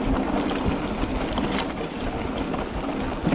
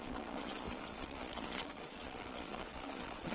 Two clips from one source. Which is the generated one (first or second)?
second